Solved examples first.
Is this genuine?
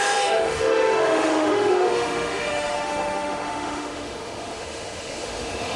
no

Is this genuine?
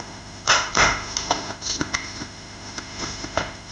no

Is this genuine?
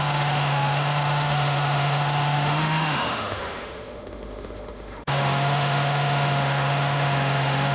no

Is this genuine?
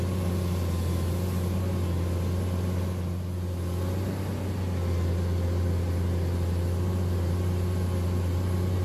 yes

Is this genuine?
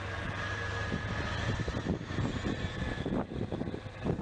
yes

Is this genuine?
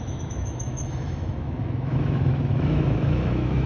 no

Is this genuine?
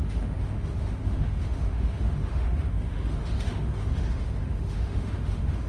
no